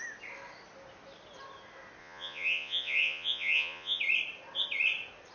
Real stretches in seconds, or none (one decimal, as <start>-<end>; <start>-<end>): 0.0-2.0; 4.0-5.3